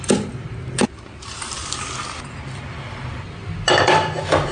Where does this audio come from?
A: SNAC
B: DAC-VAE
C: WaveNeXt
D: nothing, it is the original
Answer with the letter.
D